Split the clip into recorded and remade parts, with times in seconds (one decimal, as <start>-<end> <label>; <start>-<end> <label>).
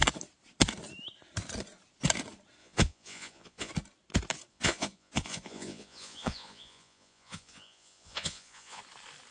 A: 0.0-2.6 recorded; 2.6-3.7 remade; 3.7-4.5 recorded; 4.5-8.8 remade; 8.8-9.3 recorded